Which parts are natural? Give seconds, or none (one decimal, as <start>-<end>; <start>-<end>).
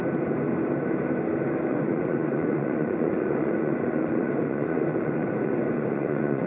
0.0-1.7